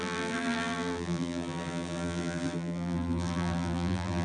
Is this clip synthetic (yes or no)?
yes